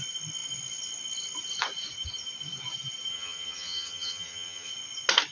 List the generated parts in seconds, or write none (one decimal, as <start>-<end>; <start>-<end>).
3.1-4.7